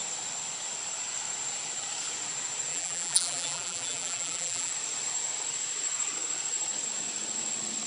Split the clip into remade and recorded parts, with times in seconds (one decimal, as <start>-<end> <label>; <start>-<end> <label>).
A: 0.0-2.7 recorded; 2.7-4.7 remade; 4.7-7.9 recorded